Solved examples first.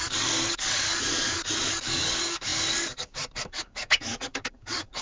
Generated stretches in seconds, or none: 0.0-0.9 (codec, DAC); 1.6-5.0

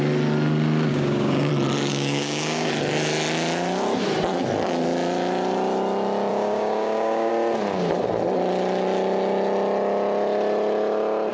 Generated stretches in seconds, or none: 0.9-1.5 (codec, DAC); 1.9-2.7; 6.3-7.3

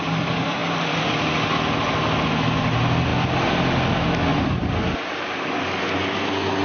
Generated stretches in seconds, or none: none

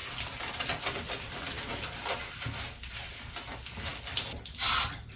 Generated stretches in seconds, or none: none